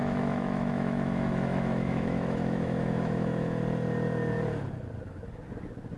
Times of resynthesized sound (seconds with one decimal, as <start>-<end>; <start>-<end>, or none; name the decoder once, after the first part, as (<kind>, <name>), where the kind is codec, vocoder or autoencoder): 0.0-3.6 (autoencoder, DAC-VAE)